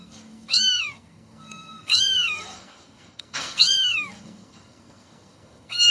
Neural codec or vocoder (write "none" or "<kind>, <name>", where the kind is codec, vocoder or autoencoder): codec, SNAC